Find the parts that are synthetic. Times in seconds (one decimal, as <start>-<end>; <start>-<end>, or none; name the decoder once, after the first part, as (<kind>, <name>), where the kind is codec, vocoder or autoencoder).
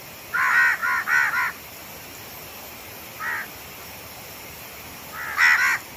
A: none